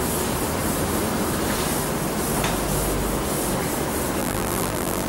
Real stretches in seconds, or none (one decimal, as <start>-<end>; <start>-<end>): 0.0-4.2

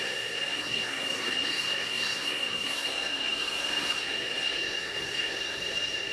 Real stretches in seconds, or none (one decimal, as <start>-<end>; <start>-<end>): none

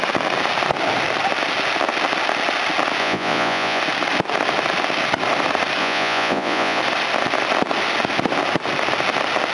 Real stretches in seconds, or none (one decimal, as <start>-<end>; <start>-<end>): 0.0-3.0; 3.8-5.8; 6.8-9.5